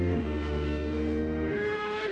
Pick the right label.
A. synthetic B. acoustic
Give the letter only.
A